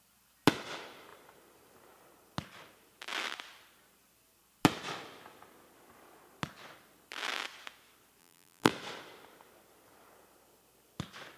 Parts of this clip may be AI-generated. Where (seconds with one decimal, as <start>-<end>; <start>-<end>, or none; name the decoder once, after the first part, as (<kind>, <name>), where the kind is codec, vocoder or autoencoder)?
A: 8.2-8.7 (vocoder, BigVGAN v2)